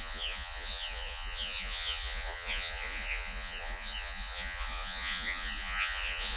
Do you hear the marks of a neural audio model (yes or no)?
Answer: yes